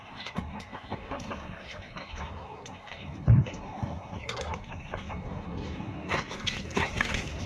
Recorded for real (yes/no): no